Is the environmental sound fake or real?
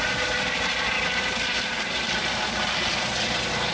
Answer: real